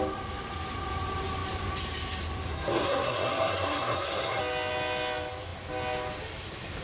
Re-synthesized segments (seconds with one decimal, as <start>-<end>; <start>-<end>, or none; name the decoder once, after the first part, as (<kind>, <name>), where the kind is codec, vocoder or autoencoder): 2.5-4.4 (codec, SNAC)